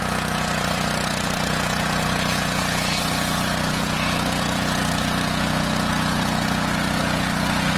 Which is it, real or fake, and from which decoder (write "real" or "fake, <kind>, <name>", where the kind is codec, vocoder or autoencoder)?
fake, vocoder, Vocos